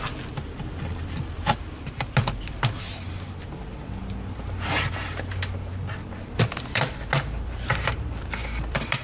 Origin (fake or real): fake